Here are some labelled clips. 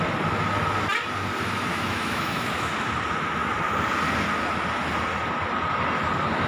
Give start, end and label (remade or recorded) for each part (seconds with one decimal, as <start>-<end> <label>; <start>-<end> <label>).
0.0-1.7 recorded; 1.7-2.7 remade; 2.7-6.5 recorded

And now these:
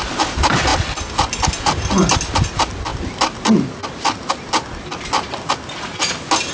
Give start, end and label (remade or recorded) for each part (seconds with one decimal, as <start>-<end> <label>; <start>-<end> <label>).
0.0-6.5 recorded

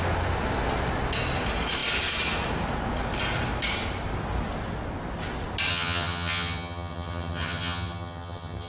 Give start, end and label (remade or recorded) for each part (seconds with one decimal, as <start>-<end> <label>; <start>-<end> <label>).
0.0-5.7 recorded; 5.7-8.7 remade

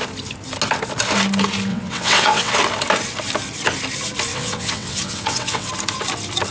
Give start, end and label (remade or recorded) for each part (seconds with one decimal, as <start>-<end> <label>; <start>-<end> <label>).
0.0-1.7 recorded; 1.7-2.5 remade; 2.5-4.3 recorded; 4.3-5.7 remade; 5.7-6.5 recorded

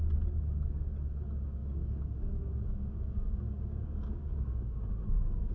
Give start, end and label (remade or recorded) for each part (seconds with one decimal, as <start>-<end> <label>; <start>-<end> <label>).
0.0-1.6 recorded; 1.6-4.9 remade; 4.9-5.5 recorded

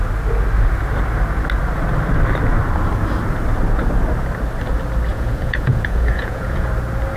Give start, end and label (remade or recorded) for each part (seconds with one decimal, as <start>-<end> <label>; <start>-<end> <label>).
0.0-5.1 recorded; 5.1-6.7 remade; 6.7-7.2 recorded